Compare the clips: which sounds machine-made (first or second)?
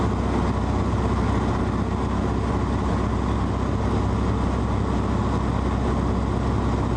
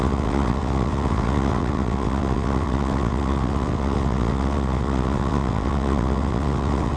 second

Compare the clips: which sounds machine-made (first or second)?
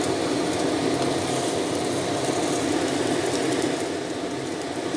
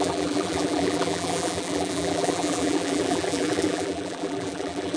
second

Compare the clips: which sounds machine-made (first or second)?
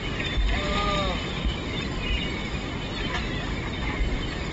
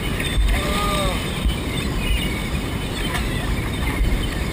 second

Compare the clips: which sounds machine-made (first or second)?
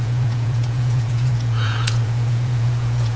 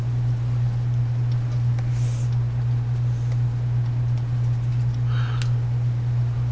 first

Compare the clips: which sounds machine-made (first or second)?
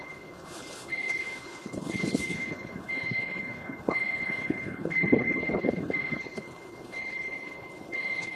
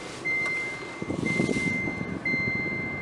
first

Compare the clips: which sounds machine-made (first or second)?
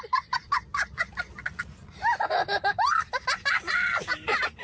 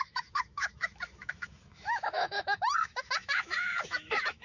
second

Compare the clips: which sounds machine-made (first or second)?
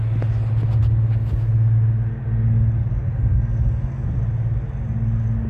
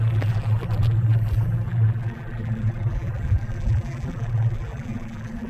second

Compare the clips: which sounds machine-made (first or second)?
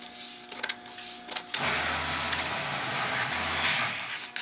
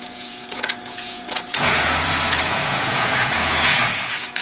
second